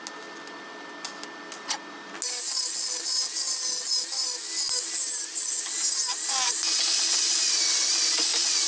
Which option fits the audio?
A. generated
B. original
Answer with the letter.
B